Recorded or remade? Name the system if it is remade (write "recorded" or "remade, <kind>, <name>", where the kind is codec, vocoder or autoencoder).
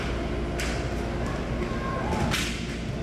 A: recorded